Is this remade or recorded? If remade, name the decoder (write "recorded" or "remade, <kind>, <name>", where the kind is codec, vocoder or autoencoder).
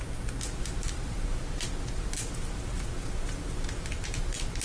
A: recorded